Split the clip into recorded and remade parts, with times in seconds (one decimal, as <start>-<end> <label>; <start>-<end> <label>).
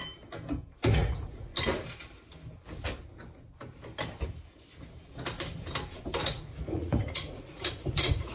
0.0-0.9 recorded; 0.9-1.5 remade; 1.5-6.2 recorded; 6.2-8.3 remade